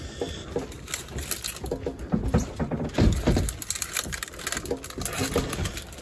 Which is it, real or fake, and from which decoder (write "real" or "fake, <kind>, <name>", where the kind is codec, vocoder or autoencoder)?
real